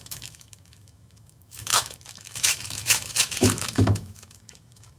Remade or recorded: remade